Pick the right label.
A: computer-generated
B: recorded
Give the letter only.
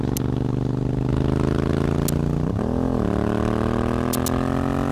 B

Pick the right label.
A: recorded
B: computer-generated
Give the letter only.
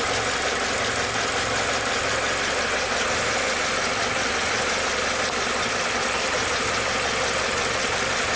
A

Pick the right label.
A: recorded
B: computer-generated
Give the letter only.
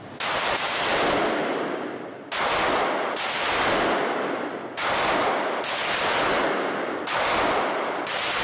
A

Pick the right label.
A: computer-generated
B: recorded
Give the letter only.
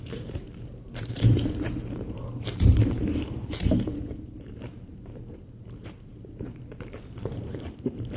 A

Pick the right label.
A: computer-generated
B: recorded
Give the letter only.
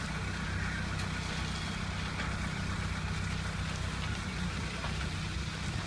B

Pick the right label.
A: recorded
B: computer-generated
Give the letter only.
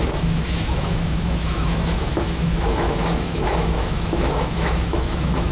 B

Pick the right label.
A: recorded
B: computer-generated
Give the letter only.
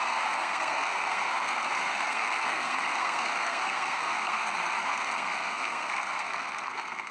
B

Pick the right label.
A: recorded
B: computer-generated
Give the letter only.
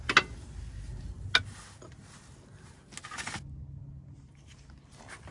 A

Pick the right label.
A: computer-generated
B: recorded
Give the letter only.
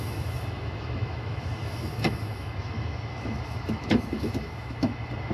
A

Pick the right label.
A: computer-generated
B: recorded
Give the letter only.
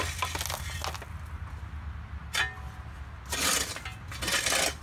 B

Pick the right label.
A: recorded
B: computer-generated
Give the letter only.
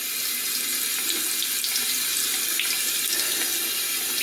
A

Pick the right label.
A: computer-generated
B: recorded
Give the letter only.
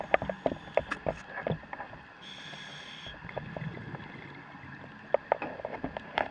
B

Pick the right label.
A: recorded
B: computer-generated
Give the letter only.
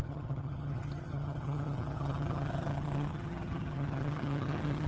B